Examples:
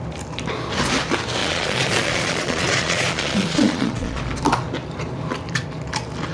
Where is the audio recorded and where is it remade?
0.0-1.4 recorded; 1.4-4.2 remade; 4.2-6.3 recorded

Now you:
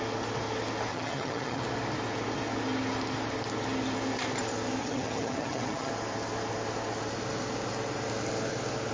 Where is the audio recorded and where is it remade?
0.0-0.9 recorded; 0.9-1.6 remade; 1.6-4.8 recorded; 4.8-5.9 remade; 5.9-8.9 recorded

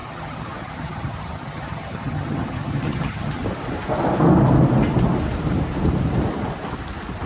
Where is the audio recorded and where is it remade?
0.0-3.4 remade; 3.4-7.3 recorded